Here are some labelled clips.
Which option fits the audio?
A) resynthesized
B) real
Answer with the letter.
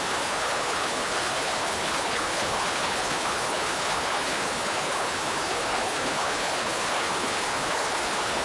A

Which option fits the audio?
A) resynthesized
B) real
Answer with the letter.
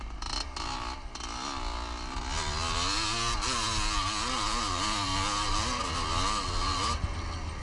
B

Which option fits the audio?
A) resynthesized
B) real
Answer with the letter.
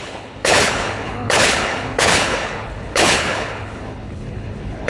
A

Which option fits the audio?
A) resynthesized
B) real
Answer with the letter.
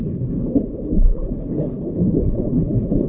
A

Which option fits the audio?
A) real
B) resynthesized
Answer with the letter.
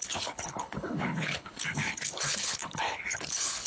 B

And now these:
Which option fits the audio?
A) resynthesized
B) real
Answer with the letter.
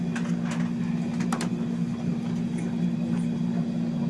B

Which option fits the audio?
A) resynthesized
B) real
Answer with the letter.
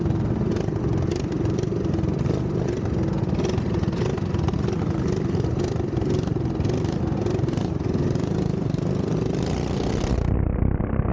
B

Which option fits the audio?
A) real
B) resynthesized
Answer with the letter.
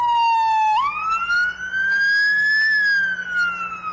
A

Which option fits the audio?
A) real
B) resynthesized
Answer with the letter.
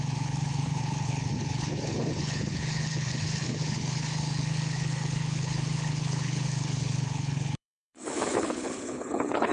B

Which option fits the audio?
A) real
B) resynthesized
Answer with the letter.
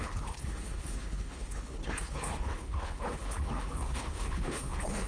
B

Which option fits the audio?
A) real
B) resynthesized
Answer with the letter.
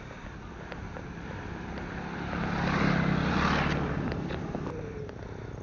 A